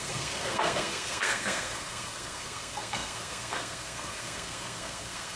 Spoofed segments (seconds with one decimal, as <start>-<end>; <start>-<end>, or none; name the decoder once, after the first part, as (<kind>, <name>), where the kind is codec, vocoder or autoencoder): 0.0-5.4 (codec, SNAC)